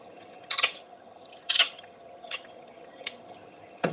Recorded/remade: remade